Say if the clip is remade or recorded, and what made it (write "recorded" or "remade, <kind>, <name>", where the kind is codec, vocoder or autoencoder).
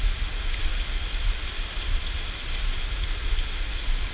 recorded